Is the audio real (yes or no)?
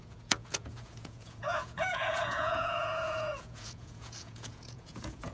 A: no